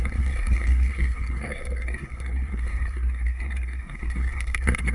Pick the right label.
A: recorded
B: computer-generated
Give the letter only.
B